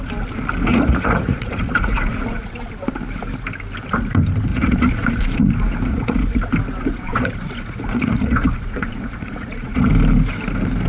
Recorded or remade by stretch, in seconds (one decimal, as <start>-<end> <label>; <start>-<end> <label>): 0.0-0.7 recorded; 0.7-2.5 remade; 2.5-4.5 recorded; 4.5-5.5 remade; 5.5-5.9 recorded; 5.9-6.4 remade; 6.4-6.9 recorded; 6.9-9.9 remade; 9.9-10.9 recorded